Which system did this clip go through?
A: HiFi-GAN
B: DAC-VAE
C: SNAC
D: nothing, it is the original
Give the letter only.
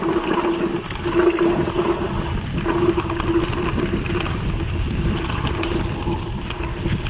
D